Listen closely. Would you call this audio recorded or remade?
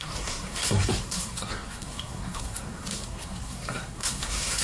remade